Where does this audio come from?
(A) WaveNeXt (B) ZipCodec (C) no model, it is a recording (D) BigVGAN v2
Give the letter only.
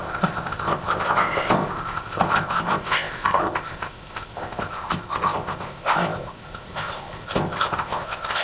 B